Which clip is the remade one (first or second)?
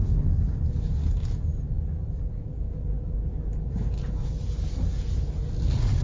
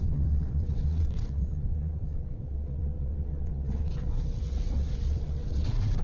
second